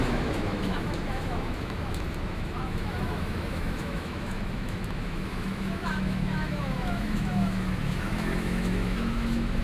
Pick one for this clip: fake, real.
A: fake